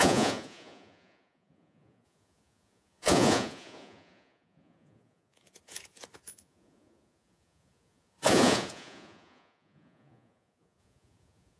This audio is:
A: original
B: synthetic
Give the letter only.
B